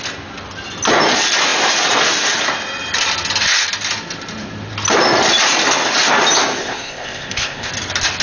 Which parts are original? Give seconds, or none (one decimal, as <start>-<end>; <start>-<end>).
0.0-6.6; 7.7-8.2